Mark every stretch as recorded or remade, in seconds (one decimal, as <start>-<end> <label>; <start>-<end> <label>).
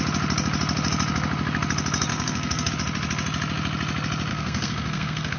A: 0.0-2.1 recorded; 2.1-2.7 remade; 2.7-4.3 recorded; 4.3-5.4 remade